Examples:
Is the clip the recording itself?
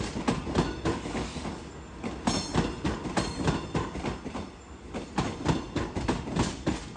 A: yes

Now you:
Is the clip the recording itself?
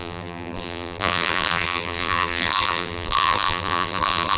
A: no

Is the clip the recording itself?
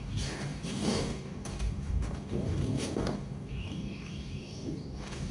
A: no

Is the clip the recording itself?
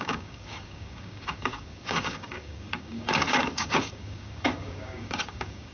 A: no